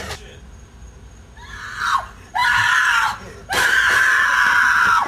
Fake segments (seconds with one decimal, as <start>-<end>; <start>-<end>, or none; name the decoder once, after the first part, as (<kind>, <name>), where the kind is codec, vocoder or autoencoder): none